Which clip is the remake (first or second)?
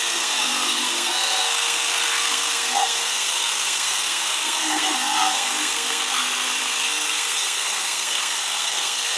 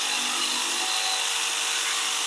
first